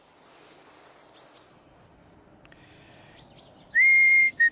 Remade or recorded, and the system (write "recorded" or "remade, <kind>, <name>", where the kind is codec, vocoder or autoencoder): recorded